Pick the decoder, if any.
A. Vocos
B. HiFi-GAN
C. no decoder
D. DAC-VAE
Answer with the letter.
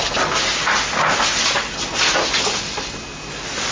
C